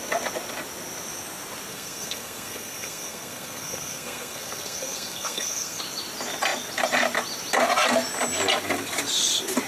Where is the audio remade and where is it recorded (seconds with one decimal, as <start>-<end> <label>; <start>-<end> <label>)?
0.0-1.7 recorded; 1.7-5.8 remade; 5.8-9.7 recorded